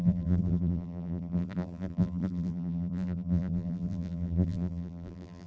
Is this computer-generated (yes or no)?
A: yes